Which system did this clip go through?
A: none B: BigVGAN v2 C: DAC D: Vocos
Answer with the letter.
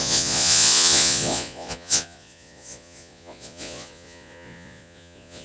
D